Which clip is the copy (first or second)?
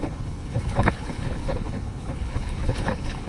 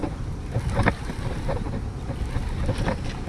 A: first